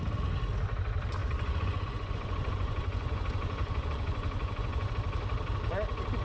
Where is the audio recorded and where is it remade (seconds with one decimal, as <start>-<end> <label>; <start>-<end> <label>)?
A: 0.0-1.2 recorded; 1.2-4.9 remade; 4.9-6.2 recorded

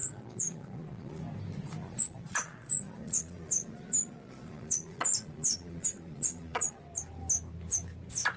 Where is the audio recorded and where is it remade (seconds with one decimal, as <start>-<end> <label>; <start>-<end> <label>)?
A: 0.0-1.2 remade; 1.2-1.8 recorded; 1.8-6.8 remade; 6.8-8.4 recorded

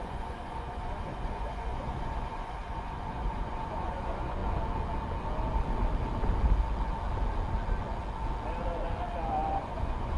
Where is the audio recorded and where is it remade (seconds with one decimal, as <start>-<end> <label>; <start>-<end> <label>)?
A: 0.0-4.4 remade; 4.4-9.5 recorded; 9.5-10.2 remade

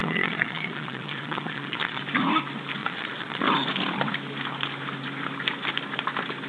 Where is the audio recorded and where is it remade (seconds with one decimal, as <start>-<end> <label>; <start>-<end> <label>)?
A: 0.0-2.0 remade; 2.0-2.8 recorded; 2.8-3.4 remade; 3.4-6.5 recorded

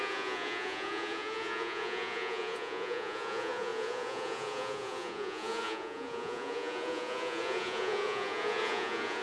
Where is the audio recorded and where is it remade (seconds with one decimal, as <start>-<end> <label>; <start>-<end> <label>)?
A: 0.0-9.2 remade